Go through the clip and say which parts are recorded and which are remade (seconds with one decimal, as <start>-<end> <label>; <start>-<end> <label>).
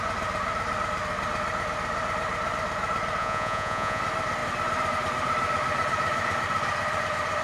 0.0-3.2 recorded; 3.2-4.0 remade; 4.0-7.4 recorded